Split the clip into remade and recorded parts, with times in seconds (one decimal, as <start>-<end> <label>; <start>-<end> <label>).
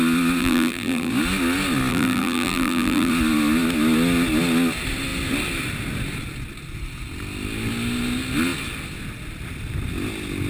0.0-0.4 recorded; 0.4-1.1 remade; 1.1-1.9 recorded; 1.9-3.1 remade; 3.1-10.5 recorded